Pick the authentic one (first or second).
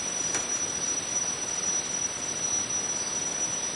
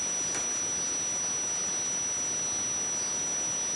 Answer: second